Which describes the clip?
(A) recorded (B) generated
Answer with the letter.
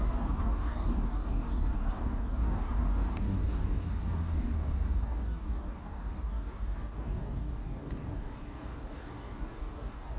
B